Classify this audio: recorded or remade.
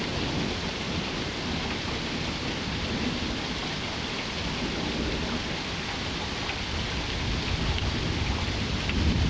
recorded